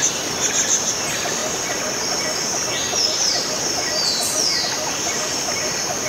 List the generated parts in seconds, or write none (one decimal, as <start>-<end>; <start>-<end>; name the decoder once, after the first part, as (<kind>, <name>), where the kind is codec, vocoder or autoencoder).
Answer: none